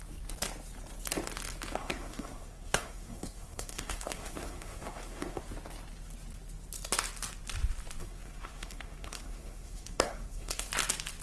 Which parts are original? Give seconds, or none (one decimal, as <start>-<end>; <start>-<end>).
0.0-1.8; 5.4-8.0; 10.7-11.2

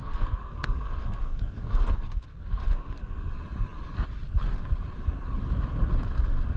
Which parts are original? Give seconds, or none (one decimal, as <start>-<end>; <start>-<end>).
3.3-6.6

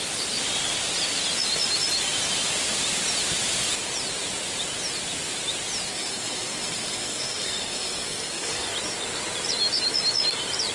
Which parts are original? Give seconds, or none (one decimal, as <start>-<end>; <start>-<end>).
0.0-5.9; 8.7-10.7

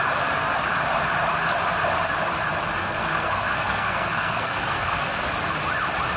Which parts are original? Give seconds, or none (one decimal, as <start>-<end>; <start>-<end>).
0.0-2.8; 5.2-6.2

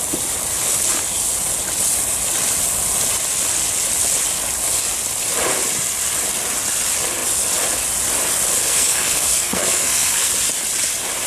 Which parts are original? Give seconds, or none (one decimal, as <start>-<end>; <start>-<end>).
0.0-8.6; 10.3-11.3

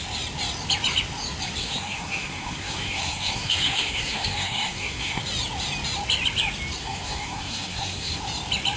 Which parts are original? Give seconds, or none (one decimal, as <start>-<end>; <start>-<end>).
0.0-1.6; 5.2-6.8; 8.2-8.8